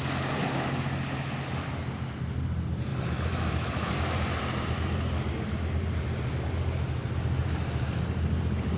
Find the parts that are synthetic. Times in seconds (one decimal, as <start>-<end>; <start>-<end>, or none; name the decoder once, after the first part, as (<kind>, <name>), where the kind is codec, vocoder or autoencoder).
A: 2.9-3.9 (autoencoder, DAC-VAE)